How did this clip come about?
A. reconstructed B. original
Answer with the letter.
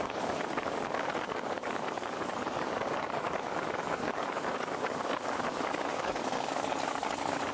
A